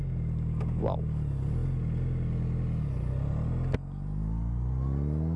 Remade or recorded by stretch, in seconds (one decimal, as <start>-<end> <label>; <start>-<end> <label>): 0.0-5.4 recorded